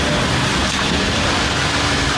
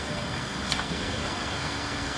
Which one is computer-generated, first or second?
second